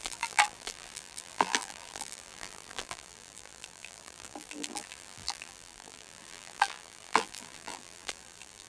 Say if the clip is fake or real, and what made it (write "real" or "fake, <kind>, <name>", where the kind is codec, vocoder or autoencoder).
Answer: fake, vocoder, BigVGAN v2